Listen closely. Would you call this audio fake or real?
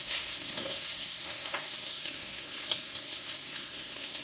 fake